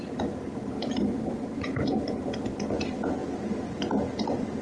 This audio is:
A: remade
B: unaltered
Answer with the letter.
B